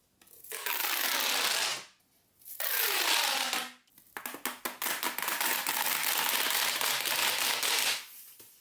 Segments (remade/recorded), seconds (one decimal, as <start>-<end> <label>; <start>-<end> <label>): 0.0-8.6 recorded